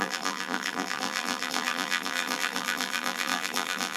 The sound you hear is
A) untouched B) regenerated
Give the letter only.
B